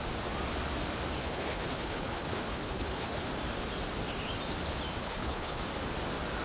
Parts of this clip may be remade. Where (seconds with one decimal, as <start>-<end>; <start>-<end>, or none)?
1.2-3.3; 5.0-5.6